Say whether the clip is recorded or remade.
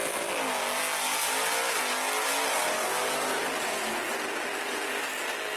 recorded